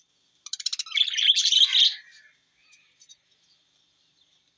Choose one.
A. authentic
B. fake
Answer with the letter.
A